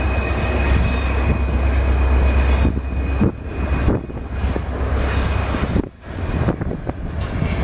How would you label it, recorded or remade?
recorded